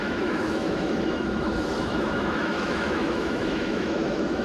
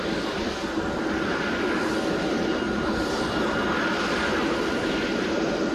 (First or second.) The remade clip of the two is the first